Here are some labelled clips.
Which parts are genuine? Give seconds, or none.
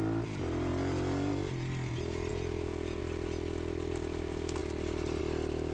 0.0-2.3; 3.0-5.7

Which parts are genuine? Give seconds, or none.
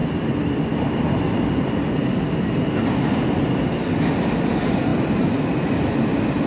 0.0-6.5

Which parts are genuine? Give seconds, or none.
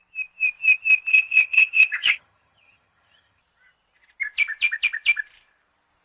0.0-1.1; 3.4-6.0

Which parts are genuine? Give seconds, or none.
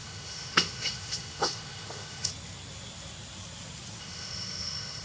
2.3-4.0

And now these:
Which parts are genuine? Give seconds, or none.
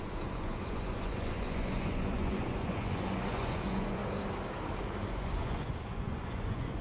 4.0-4.8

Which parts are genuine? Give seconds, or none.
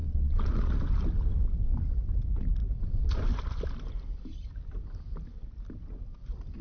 0.7-6.6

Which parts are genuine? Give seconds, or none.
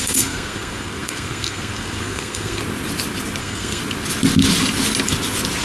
2.6-3.4; 3.8-5.6